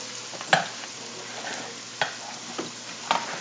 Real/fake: real